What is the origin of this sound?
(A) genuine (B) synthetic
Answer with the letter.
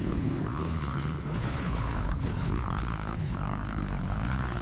B